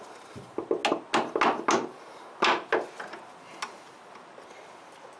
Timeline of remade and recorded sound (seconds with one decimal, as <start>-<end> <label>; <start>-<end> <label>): 0.0-5.2 recorded